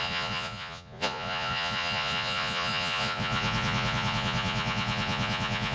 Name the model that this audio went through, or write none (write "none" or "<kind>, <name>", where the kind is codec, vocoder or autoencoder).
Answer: vocoder, Vocos